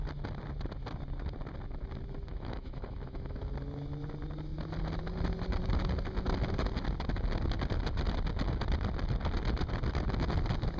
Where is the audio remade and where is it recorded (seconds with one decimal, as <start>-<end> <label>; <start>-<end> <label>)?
0.0-2.3 recorded; 2.3-3.5 remade; 3.5-10.8 recorded

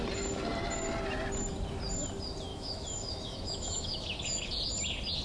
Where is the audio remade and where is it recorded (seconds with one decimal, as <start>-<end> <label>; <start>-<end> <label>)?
0.0-2.5 recorded; 2.5-4.5 remade; 4.5-5.2 recorded